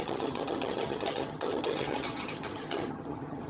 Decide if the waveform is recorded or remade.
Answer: remade